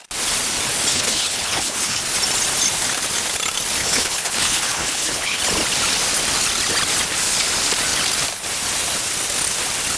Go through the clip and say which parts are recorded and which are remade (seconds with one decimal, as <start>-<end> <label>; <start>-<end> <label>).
0.0-0.9 recorded; 0.9-2.0 remade; 2.0-3.8 recorded; 3.8-5.4 remade; 5.4-10.0 recorded